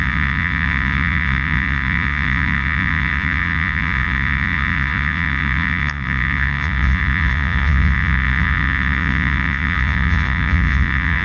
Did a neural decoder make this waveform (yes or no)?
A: yes